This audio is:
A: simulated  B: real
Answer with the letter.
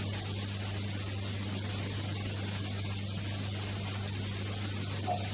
B